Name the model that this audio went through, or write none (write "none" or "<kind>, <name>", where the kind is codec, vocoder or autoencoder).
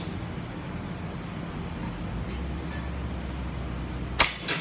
none